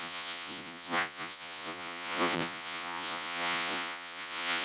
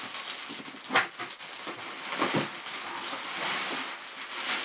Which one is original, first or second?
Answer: second